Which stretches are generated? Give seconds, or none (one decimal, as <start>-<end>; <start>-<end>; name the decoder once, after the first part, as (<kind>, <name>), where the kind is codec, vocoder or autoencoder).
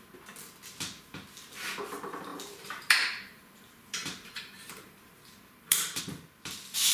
2.3-6.0 (vocoder, BigVGAN v2)